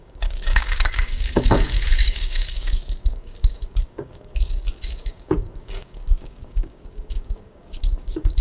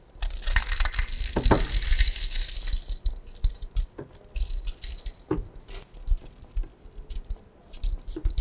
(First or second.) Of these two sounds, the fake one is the first